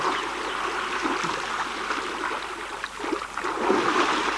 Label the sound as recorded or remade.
recorded